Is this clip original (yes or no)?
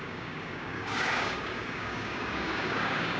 no